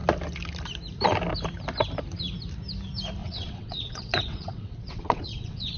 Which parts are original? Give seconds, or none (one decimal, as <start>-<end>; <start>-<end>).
0.0-3.2